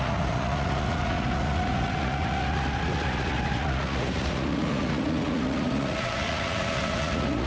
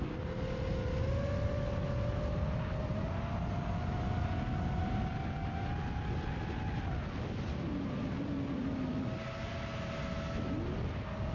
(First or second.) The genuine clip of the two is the second